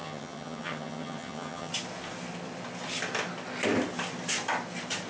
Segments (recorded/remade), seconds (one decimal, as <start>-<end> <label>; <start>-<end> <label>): 0.0-1.7 remade; 1.7-5.1 recorded